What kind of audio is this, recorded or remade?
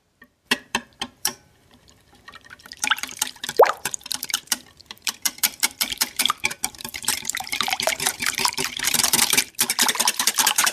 remade